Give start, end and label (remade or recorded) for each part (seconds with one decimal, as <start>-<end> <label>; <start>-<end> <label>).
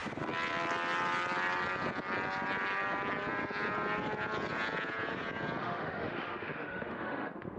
0.0-5.6 recorded; 5.6-7.6 remade